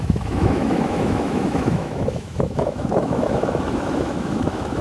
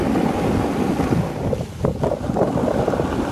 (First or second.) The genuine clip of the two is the second